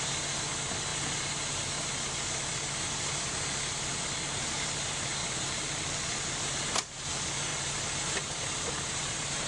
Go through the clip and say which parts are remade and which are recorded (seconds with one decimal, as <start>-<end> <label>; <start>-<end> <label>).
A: 0.0-5.2 recorded; 5.2-6.4 remade; 6.4-9.5 recorded